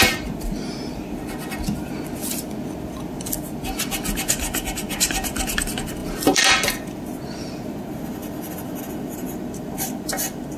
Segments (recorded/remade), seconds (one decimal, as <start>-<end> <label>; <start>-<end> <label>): 0.0-6.0 recorded; 6.0-6.5 remade; 6.5-8.2 recorded; 8.2-8.8 remade; 8.8-10.6 recorded